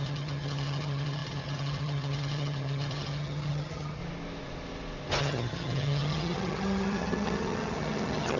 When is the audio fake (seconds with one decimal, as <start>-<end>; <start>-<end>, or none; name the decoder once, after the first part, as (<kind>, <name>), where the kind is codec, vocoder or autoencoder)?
0.0-4.0 (vocoder, HiFi-GAN); 5.2-8.4